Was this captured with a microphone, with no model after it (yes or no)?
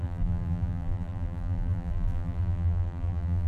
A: no